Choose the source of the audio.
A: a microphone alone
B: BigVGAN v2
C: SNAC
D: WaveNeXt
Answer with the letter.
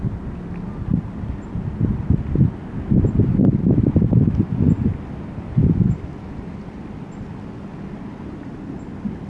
A